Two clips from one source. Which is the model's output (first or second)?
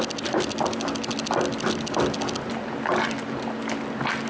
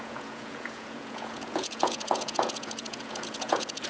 second